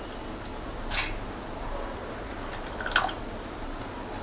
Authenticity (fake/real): real